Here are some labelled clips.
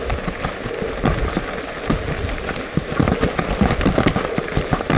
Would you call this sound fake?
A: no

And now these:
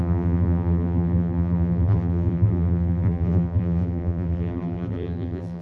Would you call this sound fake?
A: yes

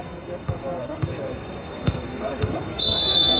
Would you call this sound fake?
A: yes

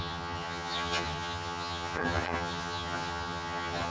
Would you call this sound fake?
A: yes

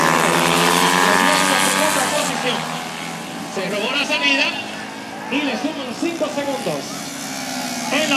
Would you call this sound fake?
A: no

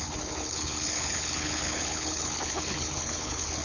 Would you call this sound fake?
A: yes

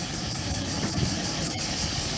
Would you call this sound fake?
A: yes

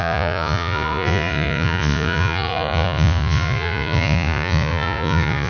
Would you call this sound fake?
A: yes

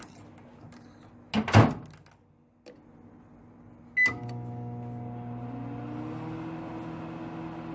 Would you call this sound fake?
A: no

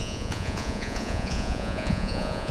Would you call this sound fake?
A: yes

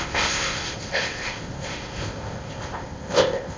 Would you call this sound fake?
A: yes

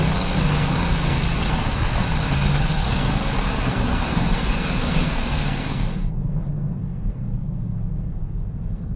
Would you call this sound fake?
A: yes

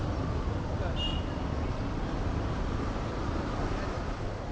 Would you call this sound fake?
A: no